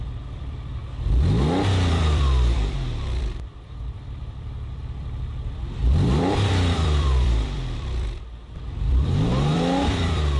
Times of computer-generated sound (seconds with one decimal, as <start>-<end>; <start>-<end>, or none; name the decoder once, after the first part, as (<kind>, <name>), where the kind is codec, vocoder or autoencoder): 0.0-0.8 (vocoder, BigVGAN v2); 1.9-10.4